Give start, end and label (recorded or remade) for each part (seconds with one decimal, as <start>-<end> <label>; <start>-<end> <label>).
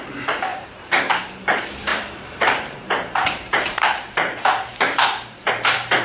0.0-0.5 recorded; 0.5-1.2 remade; 1.2-1.9 recorded; 1.9-5.5 remade; 5.5-6.0 recorded